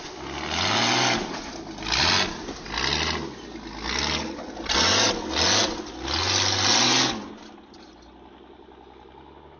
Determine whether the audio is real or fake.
real